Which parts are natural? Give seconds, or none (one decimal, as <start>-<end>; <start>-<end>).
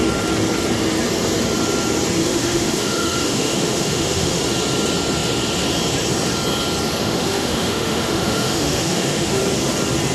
0.0-2.2; 4.4-7.0; 9.4-10.1